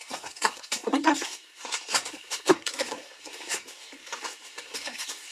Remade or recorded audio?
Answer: remade